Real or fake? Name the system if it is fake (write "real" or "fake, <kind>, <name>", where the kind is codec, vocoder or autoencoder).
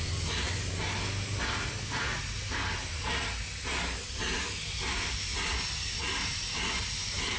real